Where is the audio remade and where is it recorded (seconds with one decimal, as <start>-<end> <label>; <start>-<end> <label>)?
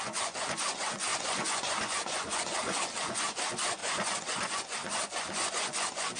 0.0-6.2 remade